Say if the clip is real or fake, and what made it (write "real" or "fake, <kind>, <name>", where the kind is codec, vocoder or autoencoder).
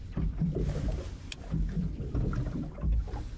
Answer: real